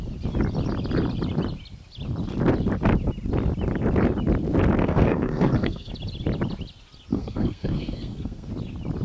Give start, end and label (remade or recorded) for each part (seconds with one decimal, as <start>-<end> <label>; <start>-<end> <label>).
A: 0.0-4.8 recorded; 4.8-5.9 remade; 5.9-7.1 recorded; 7.1-8.5 remade; 8.5-9.0 recorded